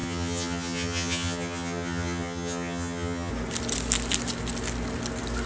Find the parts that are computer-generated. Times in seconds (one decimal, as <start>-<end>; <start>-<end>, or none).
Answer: 0.0-3.3

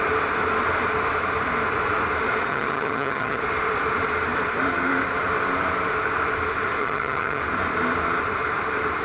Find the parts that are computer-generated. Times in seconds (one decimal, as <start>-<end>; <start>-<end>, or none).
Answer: 2.5-3.4; 6.8-7.4

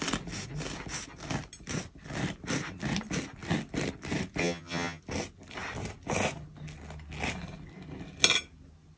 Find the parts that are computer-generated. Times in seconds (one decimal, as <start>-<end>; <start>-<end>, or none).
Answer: 4.4-5.0

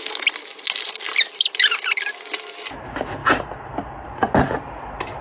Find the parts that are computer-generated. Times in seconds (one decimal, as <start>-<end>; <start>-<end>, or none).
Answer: none

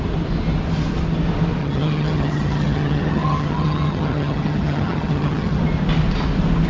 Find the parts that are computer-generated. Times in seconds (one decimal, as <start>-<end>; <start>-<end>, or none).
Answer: 1.6-5.6

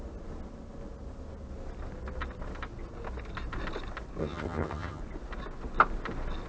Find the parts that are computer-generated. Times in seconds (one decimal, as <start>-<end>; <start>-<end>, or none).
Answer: 4.2-5.0

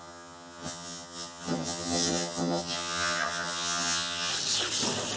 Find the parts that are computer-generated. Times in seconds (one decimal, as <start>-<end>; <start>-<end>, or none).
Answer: 0.0-4.3